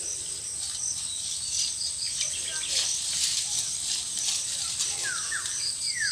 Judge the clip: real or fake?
real